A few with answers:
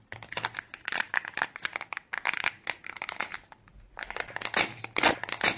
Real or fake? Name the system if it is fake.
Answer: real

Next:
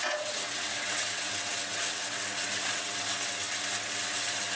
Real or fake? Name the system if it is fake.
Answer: fake, vocoder, WaveNeXt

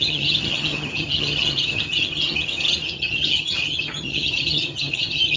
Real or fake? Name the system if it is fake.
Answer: fake, vocoder, HiFi-GAN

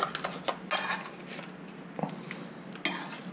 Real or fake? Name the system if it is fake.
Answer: real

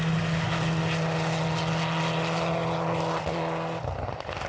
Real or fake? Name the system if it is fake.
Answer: real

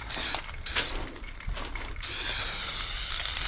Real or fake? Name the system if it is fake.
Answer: real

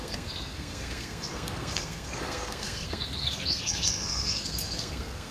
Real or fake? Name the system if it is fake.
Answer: fake, codec, SNAC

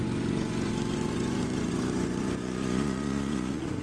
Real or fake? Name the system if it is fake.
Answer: fake, vocoder, Vocos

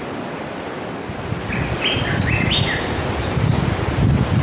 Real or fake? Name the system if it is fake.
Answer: real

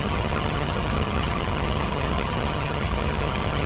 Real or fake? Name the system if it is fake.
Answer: fake, vocoder, HiFi-GAN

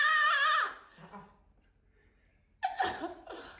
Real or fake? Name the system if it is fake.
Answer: real